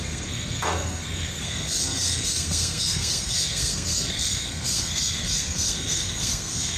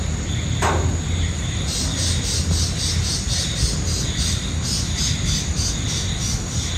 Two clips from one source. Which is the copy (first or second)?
first